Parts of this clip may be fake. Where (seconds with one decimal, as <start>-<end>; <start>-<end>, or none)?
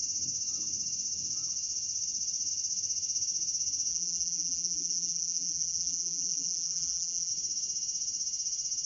3.9-7.3